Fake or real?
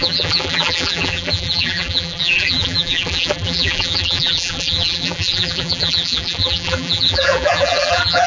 fake